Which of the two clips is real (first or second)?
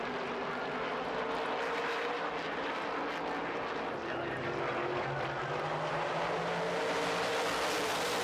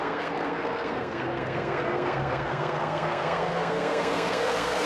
first